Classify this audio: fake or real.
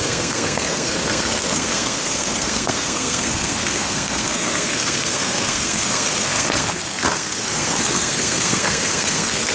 fake